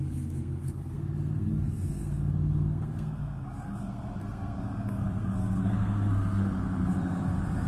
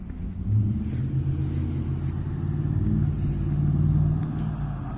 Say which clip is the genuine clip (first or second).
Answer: second